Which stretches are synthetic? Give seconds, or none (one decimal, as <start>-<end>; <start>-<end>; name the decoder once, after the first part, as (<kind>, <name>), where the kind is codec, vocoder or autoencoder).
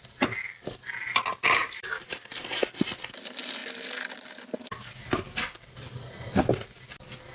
1.6-2.4 (vocoder, BigVGAN v2)